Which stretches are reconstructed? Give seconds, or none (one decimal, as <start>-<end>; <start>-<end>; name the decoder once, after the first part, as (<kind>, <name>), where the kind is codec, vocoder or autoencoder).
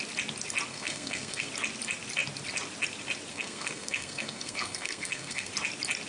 0.7-1.5 (codec, SNAC); 3.3-5.5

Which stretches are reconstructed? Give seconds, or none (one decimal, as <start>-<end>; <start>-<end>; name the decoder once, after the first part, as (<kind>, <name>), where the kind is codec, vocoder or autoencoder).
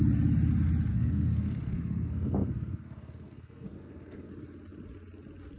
0.9-4.3 (codec, SNAC)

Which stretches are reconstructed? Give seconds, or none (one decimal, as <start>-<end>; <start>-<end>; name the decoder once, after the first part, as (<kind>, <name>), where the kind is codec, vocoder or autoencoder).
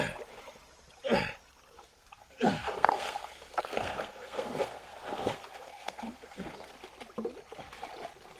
1.9-6.7 (codec, SNAC)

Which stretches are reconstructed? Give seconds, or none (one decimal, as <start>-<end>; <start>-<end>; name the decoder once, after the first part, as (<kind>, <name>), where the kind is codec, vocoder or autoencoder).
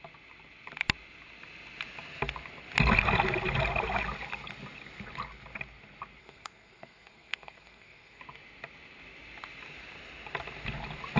6.2-8.2 (codec, SNAC)